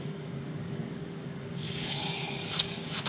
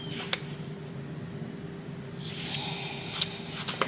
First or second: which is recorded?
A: second